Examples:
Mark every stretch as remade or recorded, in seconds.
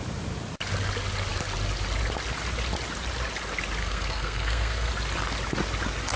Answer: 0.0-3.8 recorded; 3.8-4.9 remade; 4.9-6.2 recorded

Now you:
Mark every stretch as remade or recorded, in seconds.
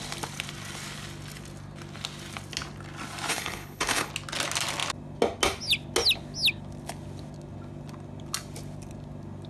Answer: 0.0-3.3 recorded; 3.3-4.1 remade; 4.1-9.5 recorded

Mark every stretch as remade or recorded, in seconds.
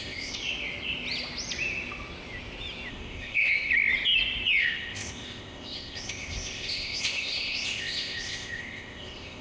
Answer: 0.0-0.4 remade; 0.4-2.9 recorded; 2.9-3.7 remade; 3.7-4.6 recorded; 4.6-9.4 remade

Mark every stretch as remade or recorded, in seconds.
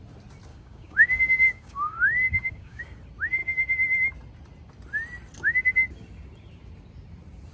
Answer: 0.0-0.5 recorded; 0.5-2.8 remade; 2.8-7.5 recorded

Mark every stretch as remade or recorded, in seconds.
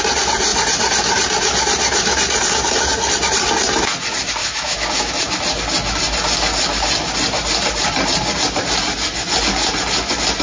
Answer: 0.0-4.4 recorded; 4.4-5.1 remade; 5.1-10.4 recorded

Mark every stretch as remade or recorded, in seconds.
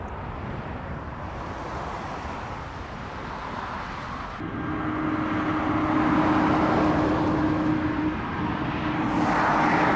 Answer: 0.0-10.0 recorded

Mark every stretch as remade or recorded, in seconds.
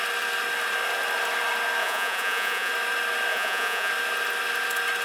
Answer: 0.0-1.8 recorded; 1.8-2.7 remade; 2.7-3.3 recorded; 3.3-3.9 remade; 3.9-5.0 recorded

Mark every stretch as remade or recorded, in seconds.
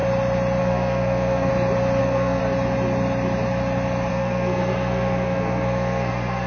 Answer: 0.0-0.6 recorded; 0.6-1.5 remade; 1.5-2.0 recorded; 2.0-2.4 remade; 2.4-4.1 recorded; 4.1-6.5 remade